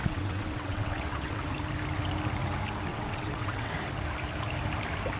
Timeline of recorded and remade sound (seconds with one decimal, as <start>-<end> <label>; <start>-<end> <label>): 0.0-1.4 remade; 1.4-2.9 recorded; 2.9-3.7 remade; 3.7-5.2 recorded